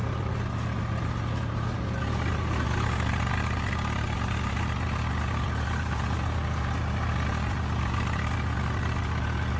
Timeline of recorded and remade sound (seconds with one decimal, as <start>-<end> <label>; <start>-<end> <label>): 0.0-9.6 recorded